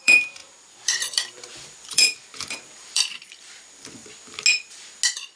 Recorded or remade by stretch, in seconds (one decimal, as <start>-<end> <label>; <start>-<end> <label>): 0.0-4.0 remade; 4.0-5.4 recorded